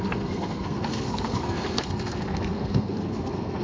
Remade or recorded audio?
remade